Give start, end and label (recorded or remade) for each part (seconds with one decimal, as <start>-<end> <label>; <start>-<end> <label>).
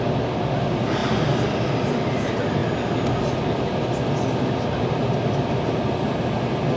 0.0-6.8 recorded